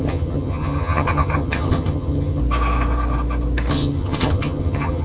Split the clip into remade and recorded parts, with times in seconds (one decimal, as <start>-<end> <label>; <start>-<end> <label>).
0.0-2.4 remade; 2.4-3.7 recorded; 3.7-5.0 remade